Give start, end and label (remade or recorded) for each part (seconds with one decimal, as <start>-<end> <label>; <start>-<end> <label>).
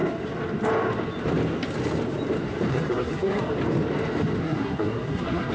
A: 0.0-2.7 recorded; 2.7-3.4 remade; 3.4-4.4 recorded; 4.4-5.5 remade